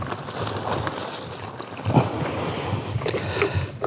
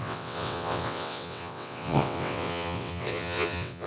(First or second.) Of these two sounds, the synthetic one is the second